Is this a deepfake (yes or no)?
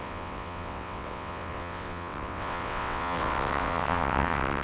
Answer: yes